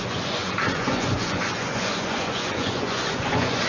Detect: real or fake fake